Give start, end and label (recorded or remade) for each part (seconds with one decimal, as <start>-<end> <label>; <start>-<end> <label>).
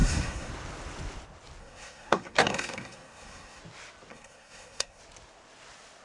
0.0-0.5 remade; 0.5-1.6 recorded; 1.6-3.6 remade; 3.6-4.1 recorded; 4.1-5.0 remade; 5.0-6.0 recorded